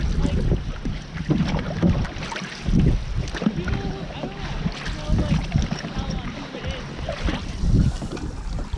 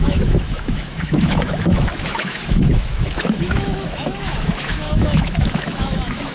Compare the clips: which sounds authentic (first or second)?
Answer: first